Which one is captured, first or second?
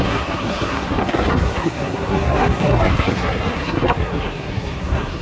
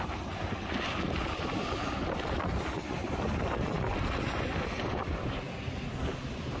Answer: second